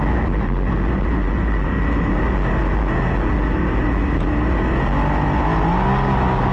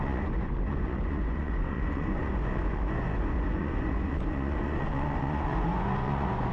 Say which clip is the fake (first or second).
second